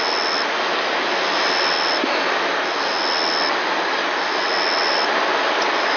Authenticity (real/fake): real